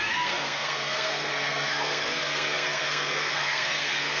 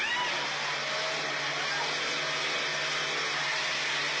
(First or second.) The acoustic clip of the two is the second